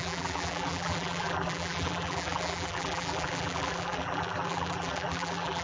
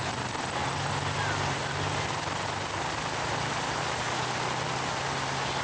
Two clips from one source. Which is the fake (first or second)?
first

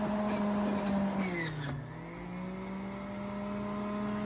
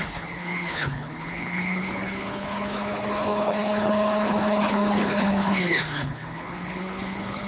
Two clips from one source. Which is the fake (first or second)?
second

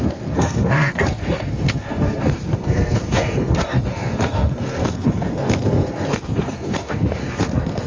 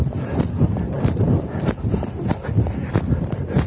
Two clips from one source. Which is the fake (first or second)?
first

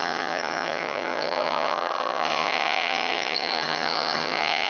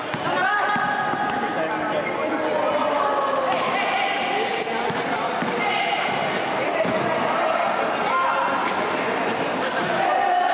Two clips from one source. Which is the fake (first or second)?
first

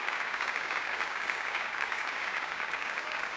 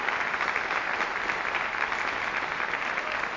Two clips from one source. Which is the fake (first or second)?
first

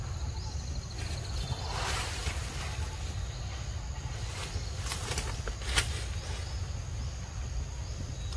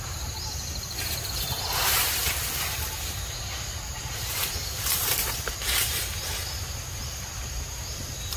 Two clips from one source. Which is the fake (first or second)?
second